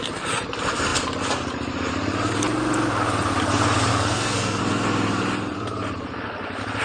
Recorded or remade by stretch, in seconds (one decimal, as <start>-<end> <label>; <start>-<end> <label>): 0.0-3.9 recorded; 3.9-4.6 remade; 4.6-6.8 recorded